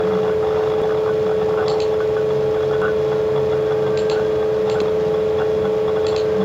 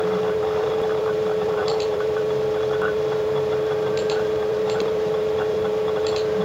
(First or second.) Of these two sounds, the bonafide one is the first